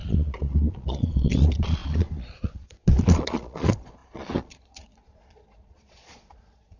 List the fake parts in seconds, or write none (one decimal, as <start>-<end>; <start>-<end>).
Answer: 0.0-6.8